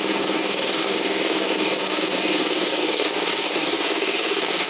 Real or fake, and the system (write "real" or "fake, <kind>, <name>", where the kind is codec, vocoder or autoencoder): fake, codec, DAC